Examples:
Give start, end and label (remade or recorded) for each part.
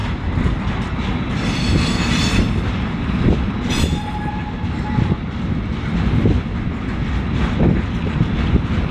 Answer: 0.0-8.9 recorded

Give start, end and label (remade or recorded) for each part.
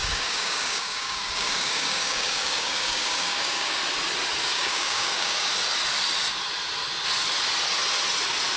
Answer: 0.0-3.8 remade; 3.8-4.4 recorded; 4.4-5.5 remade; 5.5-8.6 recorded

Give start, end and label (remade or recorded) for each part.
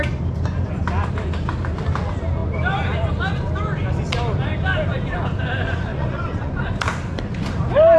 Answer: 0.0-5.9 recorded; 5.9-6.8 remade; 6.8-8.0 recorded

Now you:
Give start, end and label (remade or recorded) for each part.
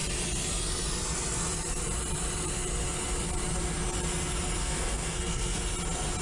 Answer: 0.0-4.6 recorded; 4.6-5.6 remade; 5.6-6.2 recorded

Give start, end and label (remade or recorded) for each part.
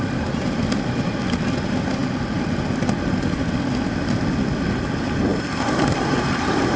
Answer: 0.0-6.8 recorded